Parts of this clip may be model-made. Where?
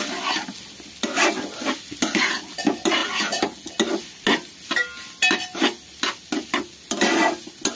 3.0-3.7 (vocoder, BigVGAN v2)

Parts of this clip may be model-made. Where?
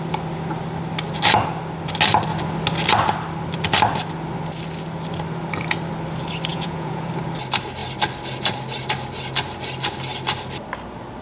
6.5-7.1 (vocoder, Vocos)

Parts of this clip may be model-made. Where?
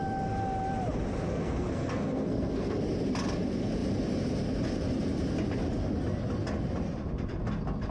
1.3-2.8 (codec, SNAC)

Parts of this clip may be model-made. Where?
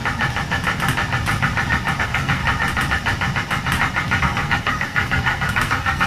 2.0-2.4 (codec, SNAC); 4.2-6.1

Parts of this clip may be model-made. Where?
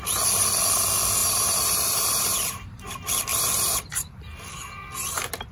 1.2-2.9 (vocoder, BigVGAN v2); 3.3-4.1